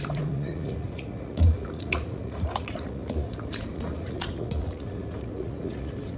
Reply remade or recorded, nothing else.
remade